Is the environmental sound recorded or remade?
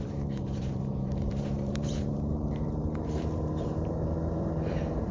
remade